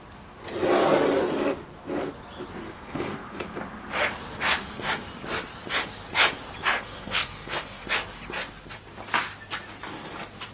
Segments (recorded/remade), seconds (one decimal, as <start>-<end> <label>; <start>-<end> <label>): 0.0-2.6 recorded; 2.6-3.6 remade; 3.6-6.6 recorded; 6.6-7.8 remade; 7.8-10.5 recorded